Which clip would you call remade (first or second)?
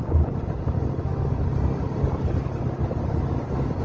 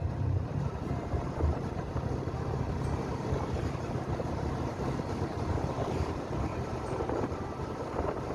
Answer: second